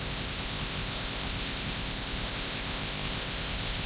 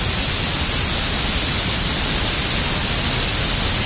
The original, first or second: second